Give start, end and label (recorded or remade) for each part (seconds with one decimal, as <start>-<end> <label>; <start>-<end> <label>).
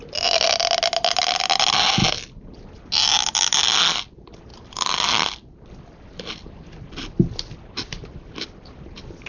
0.0-9.3 recorded